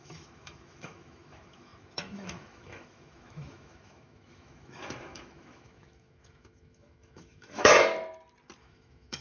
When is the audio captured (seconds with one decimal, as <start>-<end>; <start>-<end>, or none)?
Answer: 7.9-8.6